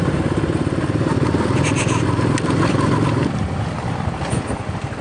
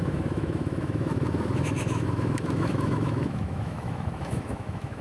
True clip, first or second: first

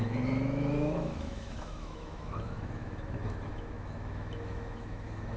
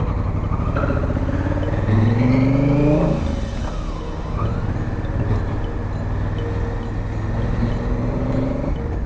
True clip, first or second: second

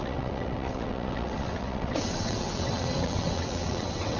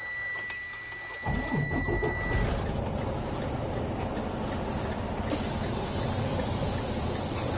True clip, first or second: second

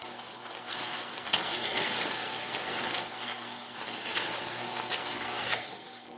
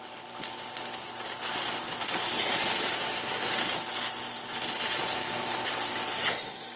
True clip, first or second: second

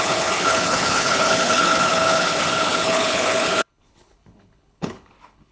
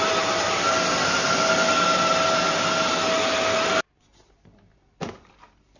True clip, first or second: second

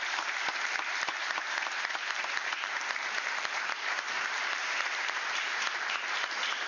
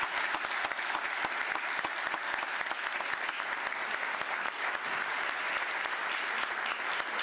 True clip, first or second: second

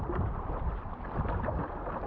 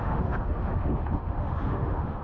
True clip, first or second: first